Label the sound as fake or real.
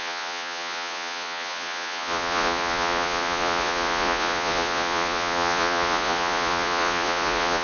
fake